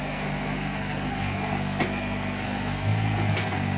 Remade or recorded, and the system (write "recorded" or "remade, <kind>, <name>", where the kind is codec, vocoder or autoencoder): remade, codec, SNAC